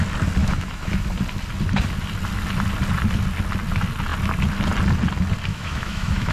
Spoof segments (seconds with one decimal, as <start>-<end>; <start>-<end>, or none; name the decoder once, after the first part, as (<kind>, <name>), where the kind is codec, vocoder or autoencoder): 0.4-0.9 (autoencoder, DAC-VAE); 5.5-6.3

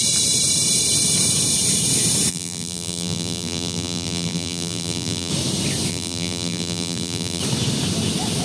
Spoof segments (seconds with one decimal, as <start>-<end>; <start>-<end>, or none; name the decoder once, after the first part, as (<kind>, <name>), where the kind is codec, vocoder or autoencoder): 2.3-5.3 (vocoder, BigVGAN v2); 5.9-7.4

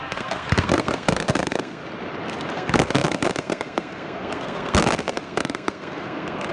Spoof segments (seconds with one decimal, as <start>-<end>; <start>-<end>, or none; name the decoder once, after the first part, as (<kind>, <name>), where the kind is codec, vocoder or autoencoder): 0.0-1.8 (codec, SNAC); 2.5-6.5

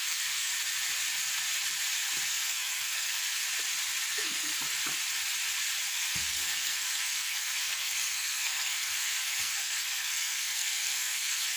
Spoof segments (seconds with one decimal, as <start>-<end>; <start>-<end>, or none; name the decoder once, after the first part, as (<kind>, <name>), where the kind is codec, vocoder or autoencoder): 0.0-0.5 (codec, SNAC); 2.3-3.4; 4.1-4.5; 5.9-11.6

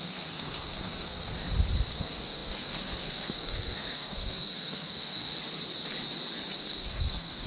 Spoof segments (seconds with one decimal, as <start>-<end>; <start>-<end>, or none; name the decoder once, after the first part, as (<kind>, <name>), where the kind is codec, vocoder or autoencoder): 0.0-1.3 (codec, SNAC); 1.9-5.3; 6.6-7.5

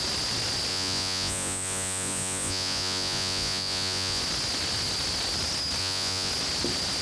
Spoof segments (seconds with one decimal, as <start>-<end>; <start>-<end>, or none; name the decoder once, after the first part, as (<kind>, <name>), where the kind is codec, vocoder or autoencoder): 0.7-4.2 (vocoder, Vocos); 5.8-6.3

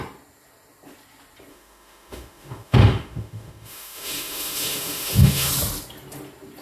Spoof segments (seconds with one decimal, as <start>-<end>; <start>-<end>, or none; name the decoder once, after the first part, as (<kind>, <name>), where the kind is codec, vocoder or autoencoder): 1.5-5.5 (autoencoder, DAC-VAE)